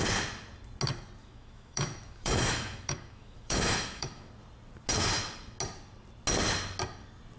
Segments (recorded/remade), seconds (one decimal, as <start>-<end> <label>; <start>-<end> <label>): 0.0-1.2 recorded; 1.2-4.3 remade; 4.3-7.4 recorded